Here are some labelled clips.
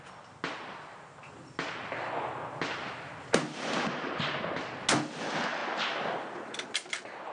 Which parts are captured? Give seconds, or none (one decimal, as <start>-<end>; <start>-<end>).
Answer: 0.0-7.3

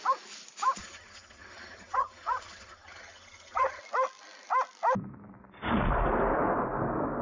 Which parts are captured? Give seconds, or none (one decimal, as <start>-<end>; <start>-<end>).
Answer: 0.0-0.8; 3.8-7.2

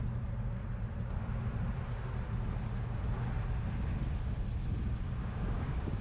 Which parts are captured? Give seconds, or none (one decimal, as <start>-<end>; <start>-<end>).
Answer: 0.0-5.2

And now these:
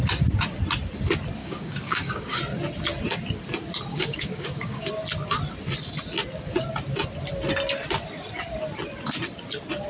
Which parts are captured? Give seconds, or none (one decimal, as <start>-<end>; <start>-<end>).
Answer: 0.0-1.4; 2.4-3.9; 4.9-9.9

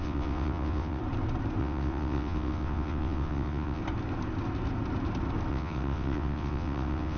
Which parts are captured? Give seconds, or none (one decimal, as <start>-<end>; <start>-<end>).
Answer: 1.0-1.6; 3.8-5.5

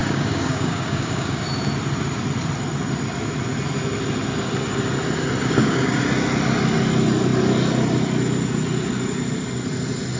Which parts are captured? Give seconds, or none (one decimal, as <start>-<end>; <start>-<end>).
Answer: 1.4-5.4; 6.0-10.2